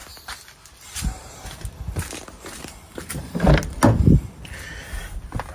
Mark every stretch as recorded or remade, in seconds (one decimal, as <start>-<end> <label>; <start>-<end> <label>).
0.0-5.5 recorded